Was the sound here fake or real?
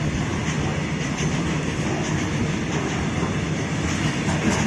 real